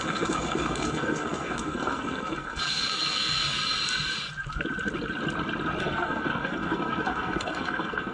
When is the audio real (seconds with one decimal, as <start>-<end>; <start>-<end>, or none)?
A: 3.6-5.8